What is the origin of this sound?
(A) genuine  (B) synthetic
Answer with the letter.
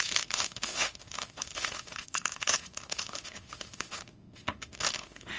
B